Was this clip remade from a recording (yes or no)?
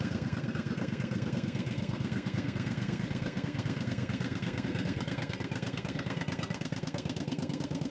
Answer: yes